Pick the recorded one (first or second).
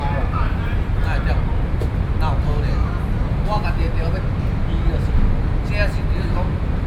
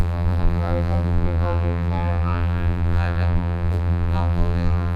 first